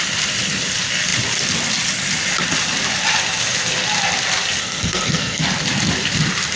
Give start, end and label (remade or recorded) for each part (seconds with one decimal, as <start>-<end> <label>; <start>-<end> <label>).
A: 0.0-4.6 recorded; 4.6-5.4 remade; 5.4-6.6 recorded